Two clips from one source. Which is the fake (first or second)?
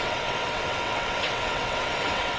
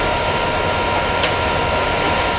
first